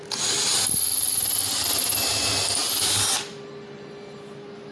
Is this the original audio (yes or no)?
yes